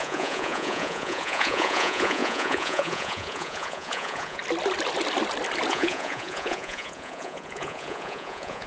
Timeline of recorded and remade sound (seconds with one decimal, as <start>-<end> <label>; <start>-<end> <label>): 0.0-4.4 remade; 4.4-5.7 recorded; 5.7-8.7 remade